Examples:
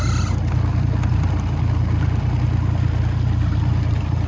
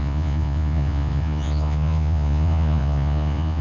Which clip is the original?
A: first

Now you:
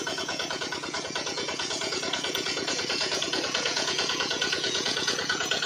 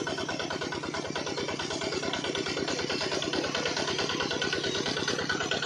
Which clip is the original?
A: second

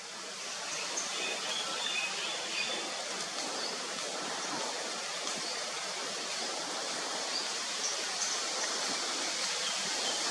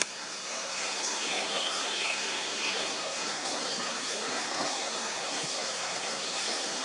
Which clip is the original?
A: first